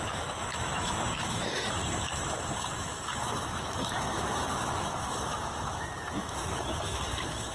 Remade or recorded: remade